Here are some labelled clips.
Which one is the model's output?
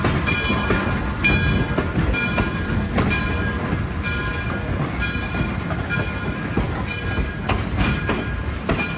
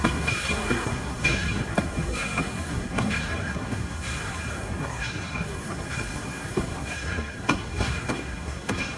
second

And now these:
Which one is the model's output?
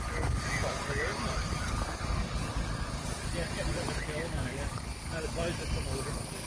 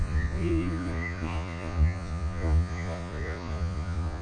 second